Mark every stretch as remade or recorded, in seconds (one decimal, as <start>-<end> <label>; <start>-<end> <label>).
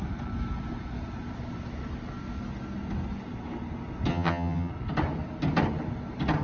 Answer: 0.0-4.1 recorded; 4.1-4.7 remade; 4.7-6.4 recorded